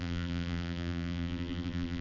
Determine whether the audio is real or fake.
fake